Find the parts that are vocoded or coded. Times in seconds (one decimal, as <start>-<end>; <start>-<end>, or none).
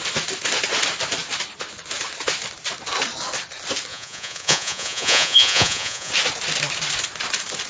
3.9-6.1